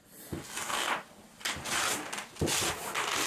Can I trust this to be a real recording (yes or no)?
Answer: yes